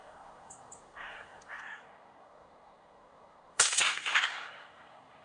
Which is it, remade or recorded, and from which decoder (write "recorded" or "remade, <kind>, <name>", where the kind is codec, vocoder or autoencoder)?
remade, codec, SNAC